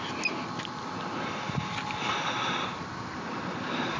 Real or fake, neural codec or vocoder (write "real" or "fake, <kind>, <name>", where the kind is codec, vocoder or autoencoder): real